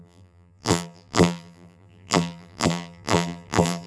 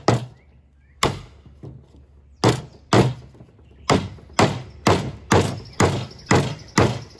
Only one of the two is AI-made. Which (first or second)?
first